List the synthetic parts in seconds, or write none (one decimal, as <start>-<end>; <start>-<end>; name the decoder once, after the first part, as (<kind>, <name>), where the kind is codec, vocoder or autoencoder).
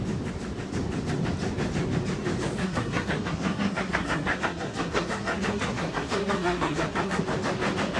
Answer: 2.6-7.2 (codec, SNAC)